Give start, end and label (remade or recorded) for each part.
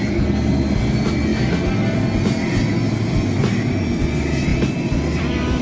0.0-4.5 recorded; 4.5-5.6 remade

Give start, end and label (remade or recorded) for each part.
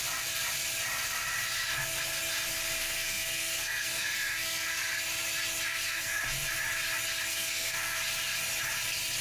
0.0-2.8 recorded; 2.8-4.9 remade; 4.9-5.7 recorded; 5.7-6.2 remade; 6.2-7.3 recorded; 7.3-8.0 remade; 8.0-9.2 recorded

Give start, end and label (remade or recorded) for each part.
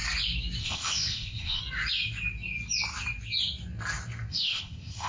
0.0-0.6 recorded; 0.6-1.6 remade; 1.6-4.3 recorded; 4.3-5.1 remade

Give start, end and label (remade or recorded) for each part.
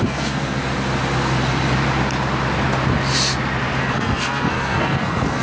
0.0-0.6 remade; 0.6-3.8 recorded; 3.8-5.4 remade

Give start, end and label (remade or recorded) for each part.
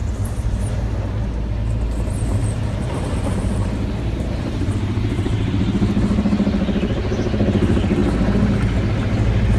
0.0-2.4 recorded; 2.4-5.5 remade; 5.5-9.6 recorded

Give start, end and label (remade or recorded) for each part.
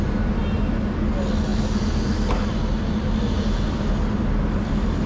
0.0-5.1 recorded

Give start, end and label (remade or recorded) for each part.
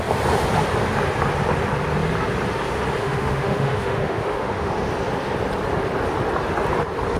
0.0-3.0 recorded; 3.0-4.7 remade; 4.7-7.2 recorded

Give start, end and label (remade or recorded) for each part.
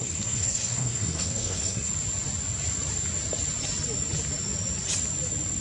0.0-1.9 remade; 1.9-5.6 recorded